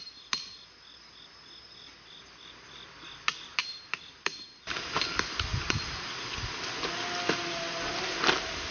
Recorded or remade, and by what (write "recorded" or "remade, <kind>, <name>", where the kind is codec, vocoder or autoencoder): recorded